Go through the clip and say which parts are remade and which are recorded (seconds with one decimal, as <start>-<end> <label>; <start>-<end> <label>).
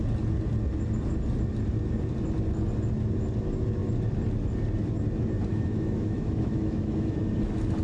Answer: 0.0-5.5 recorded; 5.5-7.2 remade; 7.2-7.8 recorded